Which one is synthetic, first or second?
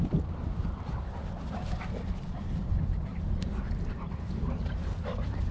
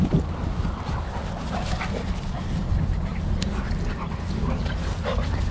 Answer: first